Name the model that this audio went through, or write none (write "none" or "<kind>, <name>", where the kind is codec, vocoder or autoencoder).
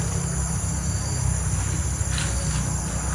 none